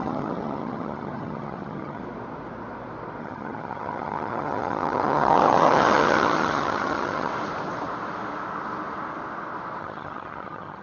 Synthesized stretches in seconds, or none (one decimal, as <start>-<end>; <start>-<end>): 0.0-2.0; 3.2-7.3; 9.8-10.8